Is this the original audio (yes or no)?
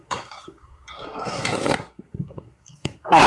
no